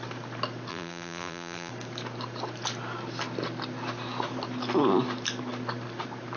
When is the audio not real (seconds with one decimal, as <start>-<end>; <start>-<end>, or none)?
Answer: 0.7-1.7